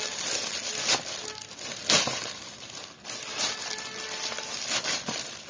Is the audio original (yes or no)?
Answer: yes